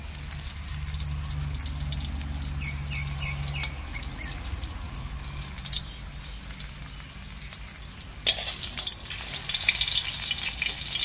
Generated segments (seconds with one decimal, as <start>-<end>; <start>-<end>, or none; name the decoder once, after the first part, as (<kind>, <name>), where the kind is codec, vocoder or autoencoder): 3.9-5.1 (vocoder, Vocos)